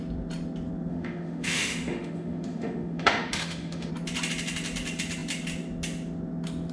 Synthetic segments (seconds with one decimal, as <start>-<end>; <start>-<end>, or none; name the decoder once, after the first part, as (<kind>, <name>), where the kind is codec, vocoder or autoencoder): 0.9-3.9 (autoencoder, DAC-VAE)